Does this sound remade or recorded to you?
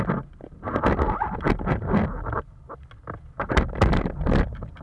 recorded